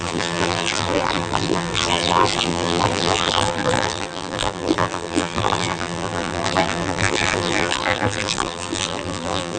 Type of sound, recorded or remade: remade